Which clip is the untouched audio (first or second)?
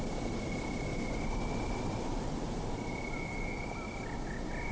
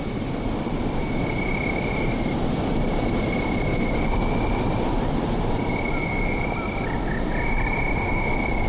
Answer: first